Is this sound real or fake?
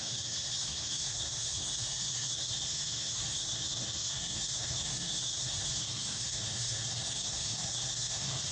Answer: fake